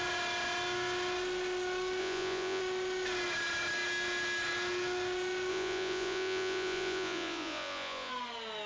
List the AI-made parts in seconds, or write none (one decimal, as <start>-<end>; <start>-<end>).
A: 2.0-2.6; 5.5-8.1